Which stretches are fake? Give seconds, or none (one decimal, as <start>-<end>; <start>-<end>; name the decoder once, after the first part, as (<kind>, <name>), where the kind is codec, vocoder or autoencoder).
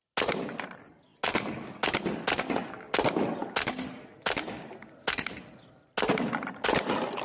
none